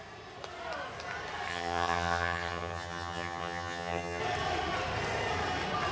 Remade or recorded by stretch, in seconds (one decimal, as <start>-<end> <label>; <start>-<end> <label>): 0.0-1.5 recorded; 1.5-4.2 remade; 4.2-5.9 recorded